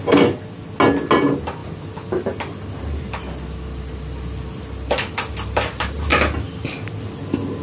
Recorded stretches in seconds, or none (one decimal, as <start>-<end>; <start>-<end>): 0.0-7.6